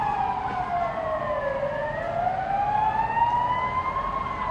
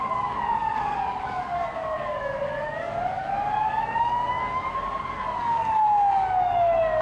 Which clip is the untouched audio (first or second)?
first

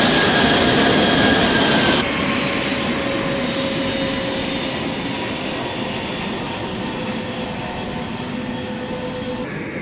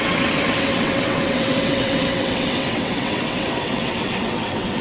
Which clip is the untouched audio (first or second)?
first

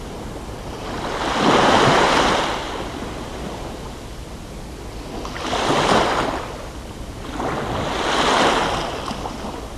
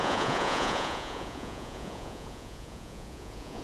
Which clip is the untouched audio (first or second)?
first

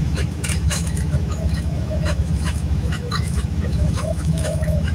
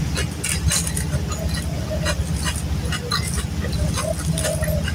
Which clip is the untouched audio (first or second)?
second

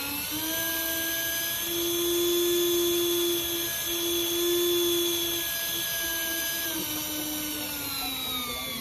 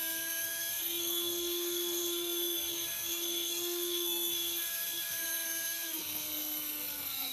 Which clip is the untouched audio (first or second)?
first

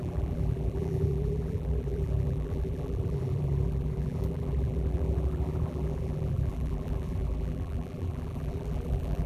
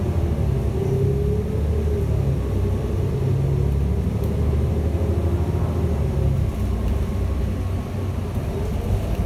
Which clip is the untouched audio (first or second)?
second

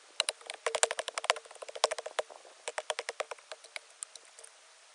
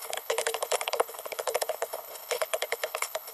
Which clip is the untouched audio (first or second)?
first